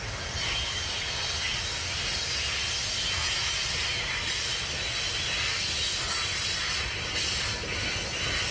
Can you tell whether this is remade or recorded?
recorded